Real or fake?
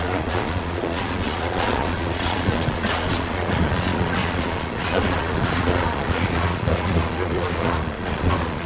fake